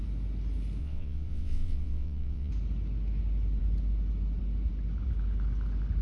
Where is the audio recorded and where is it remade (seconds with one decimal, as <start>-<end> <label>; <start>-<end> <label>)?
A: 0.0-0.8 recorded; 0.8-2.5 remade; 2.5-6.0 recorded